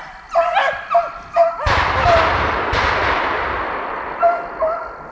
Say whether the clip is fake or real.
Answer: real